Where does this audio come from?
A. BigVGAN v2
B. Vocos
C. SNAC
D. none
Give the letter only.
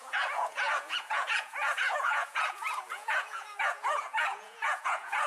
B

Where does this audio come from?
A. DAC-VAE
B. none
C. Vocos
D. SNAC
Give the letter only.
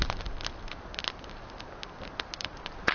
B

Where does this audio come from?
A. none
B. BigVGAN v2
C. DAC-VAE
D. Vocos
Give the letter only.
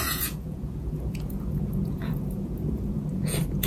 D